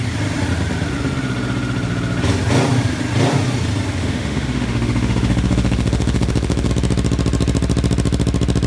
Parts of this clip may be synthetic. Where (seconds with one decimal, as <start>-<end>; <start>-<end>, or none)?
4.0-6.7